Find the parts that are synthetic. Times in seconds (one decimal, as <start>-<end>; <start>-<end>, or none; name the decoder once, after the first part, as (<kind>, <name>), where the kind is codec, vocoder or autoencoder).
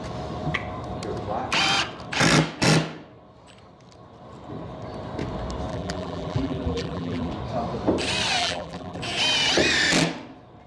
5.7-7.3 (vocoder, BigVGAN v2); 8.4-9.0